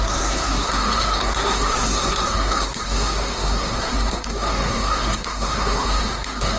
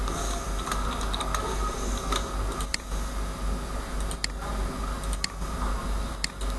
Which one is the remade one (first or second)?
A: first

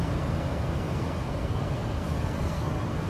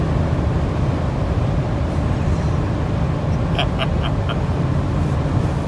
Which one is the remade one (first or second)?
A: first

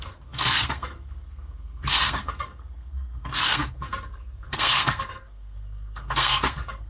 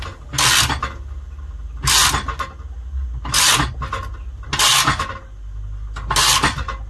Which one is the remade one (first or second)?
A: first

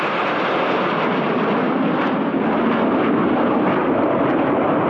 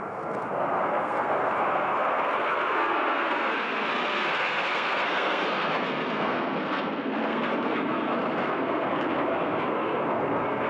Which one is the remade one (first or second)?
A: second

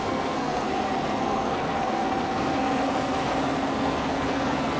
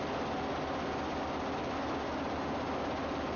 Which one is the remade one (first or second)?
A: first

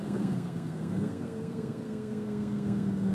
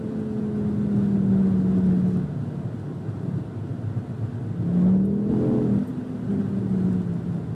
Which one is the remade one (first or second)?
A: first